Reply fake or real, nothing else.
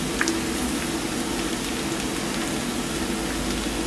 real